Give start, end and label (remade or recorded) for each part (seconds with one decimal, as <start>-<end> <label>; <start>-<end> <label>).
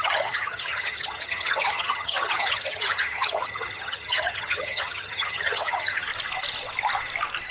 0.0-6.1 remade; 6.1-7.5 recorded